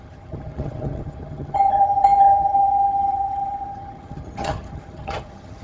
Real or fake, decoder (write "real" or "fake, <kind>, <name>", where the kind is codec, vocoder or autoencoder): fake, vocoder, HiFi-GAN